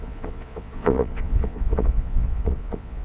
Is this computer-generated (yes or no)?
yes